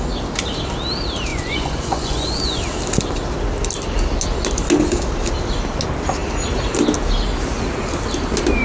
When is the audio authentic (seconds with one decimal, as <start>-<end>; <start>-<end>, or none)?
0.0-1.3; 2.6-8.6